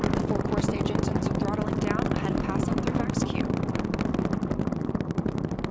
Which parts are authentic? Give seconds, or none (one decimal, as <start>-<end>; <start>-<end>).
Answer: 0.0-5.7